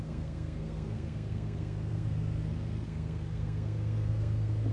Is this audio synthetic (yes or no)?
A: yes